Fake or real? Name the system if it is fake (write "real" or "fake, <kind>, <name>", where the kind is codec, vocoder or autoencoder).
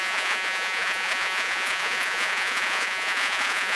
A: fake, vocoder, Vocos